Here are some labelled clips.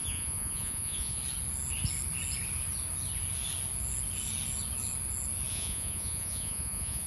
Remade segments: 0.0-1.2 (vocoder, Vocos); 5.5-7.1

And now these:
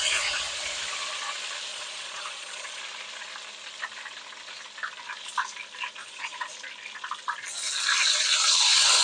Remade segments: 1.7-2.8 (vocoder, Vocos); 6.0-6.5

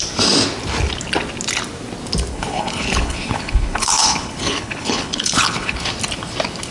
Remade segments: 2.3-5.9 (codec, HILCodec)

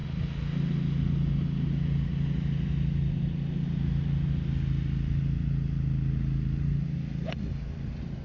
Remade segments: none